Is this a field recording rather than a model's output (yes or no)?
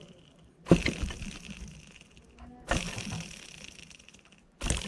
yes